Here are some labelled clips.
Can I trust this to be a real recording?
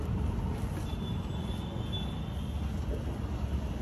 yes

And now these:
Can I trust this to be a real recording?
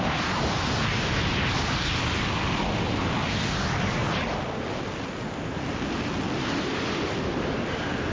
yes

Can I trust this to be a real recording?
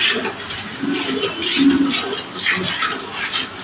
yes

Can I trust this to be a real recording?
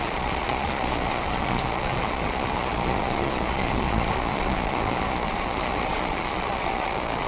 no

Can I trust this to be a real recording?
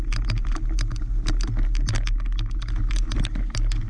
yes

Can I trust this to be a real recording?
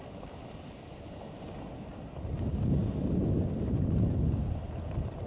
yes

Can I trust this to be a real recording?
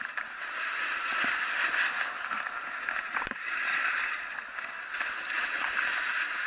yes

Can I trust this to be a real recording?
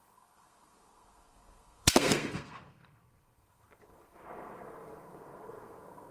no